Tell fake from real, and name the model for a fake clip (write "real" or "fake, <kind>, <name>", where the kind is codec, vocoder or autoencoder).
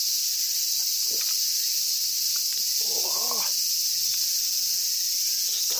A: real